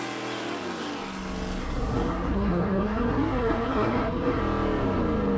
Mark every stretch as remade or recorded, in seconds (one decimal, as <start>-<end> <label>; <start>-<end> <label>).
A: 0.0-1.6 recorded; 1.6-4.4 remade; 4.4-5.4 recorded